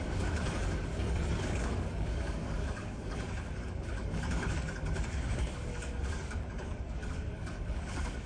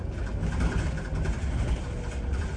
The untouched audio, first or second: second